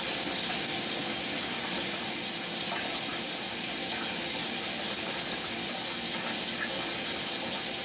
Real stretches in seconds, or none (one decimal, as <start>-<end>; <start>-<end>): 0.0-7.8